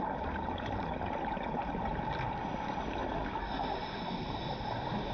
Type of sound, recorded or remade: recorded